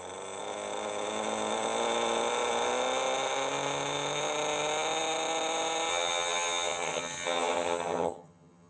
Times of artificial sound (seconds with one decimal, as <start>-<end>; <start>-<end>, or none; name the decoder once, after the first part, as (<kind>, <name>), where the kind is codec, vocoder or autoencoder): 5.9-8.7 (vocoder, HiFi-GAN)